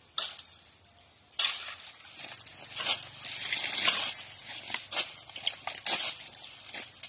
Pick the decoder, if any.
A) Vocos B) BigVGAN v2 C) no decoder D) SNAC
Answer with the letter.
C